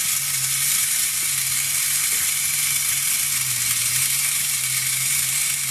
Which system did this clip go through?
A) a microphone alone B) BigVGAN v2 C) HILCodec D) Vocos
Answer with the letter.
A